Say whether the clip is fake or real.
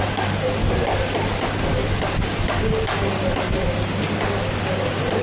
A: real